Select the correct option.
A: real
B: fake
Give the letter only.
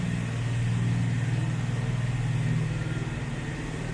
A